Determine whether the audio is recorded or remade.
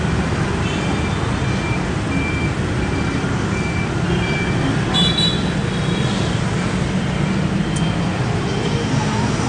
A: recorded